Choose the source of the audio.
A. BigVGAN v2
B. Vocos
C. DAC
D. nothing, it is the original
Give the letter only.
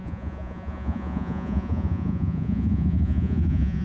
B